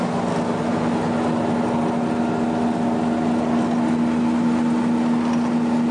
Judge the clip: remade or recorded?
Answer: recorded